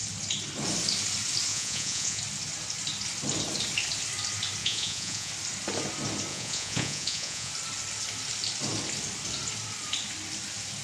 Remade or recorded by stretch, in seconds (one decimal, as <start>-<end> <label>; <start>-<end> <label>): 0.0-1.5 recorded; 1.5-2.2 remade; 2.2-4.6 recorded; 4.6-5.3 remade; 5.3-6.3 recorded; 6.3-7.5 remade; 7.5-10.8 recorded